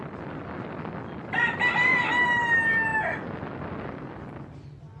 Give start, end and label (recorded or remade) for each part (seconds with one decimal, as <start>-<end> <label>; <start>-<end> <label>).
0.0-5.0 recorded